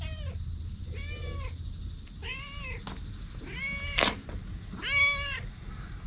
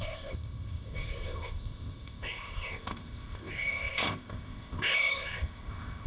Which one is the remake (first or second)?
second